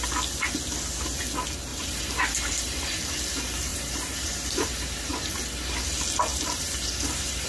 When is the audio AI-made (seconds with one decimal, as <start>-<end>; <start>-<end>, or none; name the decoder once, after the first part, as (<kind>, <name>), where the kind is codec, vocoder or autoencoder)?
1.7-3.0 (vocoder, BigVGAN v2); 3.7-5.3; 6.3-7.5